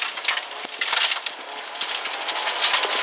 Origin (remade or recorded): recorded